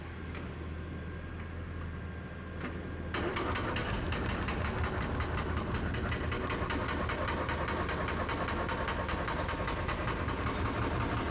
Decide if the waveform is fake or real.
real